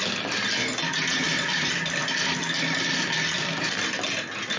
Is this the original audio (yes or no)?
yes